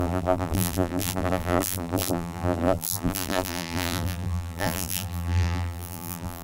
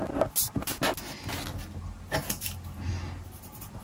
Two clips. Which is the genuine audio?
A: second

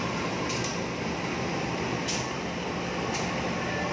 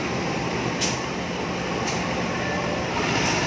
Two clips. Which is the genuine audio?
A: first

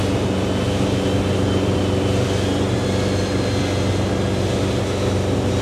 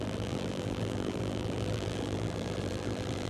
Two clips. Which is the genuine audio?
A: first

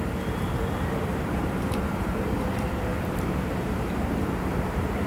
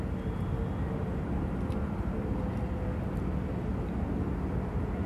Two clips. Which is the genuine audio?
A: second